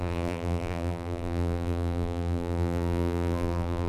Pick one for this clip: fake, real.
fake